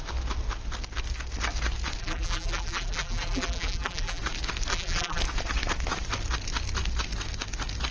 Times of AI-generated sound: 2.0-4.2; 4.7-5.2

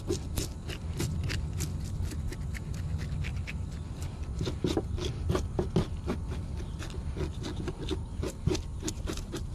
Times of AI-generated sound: 8.7-9.5

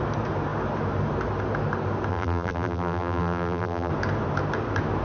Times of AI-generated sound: 2.1-3.9